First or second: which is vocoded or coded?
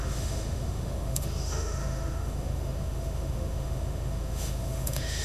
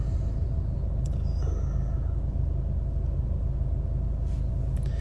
first